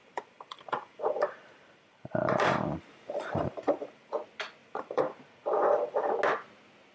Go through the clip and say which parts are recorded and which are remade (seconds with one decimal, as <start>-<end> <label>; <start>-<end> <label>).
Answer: 0.0-4.1 remade; 4.1-4.6 recorded; 4.6-6.1 remade; 6.1-6.9 recorded